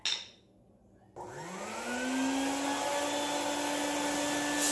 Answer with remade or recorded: recorded